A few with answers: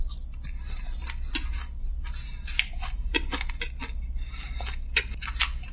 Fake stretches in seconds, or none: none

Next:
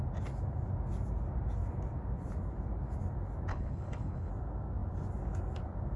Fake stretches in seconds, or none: 3.5-4.3 (codec, HILCodec)

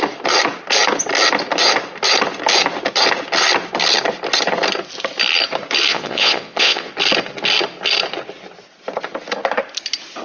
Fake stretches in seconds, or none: 5.9-6.9 (vocoder, Vocos)

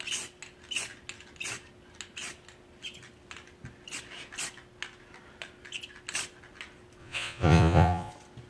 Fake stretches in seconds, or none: 7.0-8.1 (vocoder, Vocos)

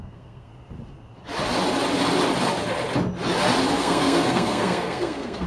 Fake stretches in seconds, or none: 0.0-0.5 (codec, SNAC); 3.8-5.5

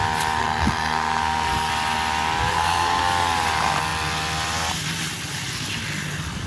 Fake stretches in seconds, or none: 0.4-1.7 (codec, SNAC); 2.5-3.0